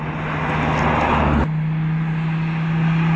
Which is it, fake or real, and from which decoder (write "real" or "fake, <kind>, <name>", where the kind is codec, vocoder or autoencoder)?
real